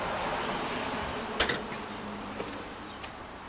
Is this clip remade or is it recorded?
recorded